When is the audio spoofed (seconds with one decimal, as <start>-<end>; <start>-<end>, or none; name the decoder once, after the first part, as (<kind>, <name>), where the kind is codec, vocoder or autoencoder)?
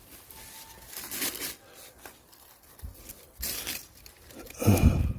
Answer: 3.1-5.2 (vocoder, BigVGAN v2)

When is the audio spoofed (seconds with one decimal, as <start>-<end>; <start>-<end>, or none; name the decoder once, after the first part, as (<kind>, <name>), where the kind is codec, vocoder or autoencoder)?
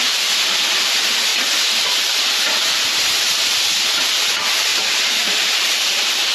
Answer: 4.7-6.3 (vocoder, BigVGAN v2)